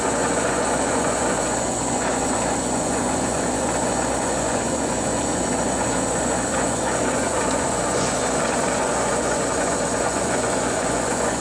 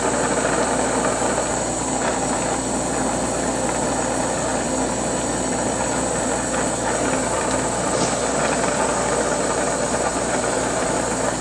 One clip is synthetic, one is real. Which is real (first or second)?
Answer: second